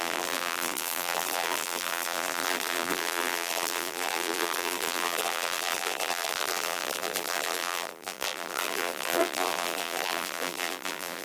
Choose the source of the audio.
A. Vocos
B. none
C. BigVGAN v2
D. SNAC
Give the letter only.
C